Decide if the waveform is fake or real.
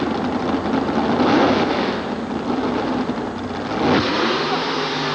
real